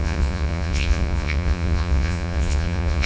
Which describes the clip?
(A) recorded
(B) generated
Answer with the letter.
B